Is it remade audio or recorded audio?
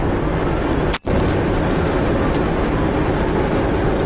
recorded